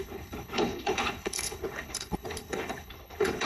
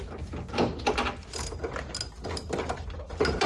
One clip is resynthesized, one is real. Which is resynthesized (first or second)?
first